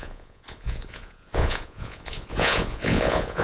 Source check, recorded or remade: remade